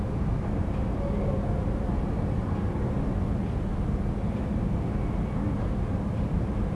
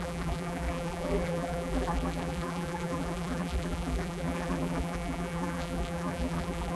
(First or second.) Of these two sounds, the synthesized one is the second